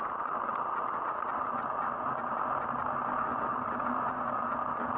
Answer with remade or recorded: recorded